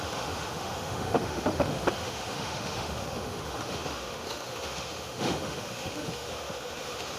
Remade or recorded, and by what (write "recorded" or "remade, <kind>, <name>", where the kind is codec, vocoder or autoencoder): remade, autoencoder, DAC-VAE